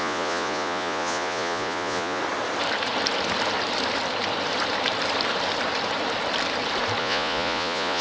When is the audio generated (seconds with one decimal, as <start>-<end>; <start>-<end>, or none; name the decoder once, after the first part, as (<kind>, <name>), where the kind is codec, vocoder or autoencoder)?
0.0-2.2 (vocoder, Vocos); 7.0-8.0